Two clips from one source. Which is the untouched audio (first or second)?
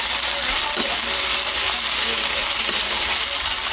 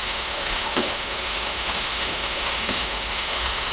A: first